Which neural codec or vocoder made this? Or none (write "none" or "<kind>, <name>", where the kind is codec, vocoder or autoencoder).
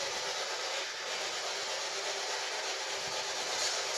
none